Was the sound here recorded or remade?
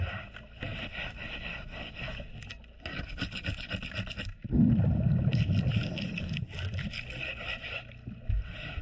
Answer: recorded